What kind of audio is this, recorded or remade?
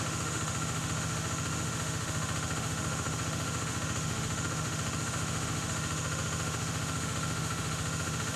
remade